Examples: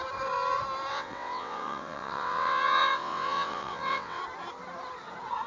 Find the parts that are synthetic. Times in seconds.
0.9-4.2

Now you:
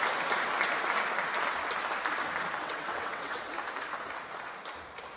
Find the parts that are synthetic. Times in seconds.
2.6-3.5